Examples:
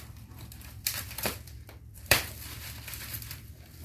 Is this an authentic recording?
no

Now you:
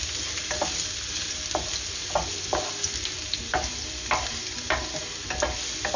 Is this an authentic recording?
yes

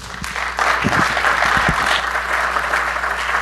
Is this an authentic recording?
yes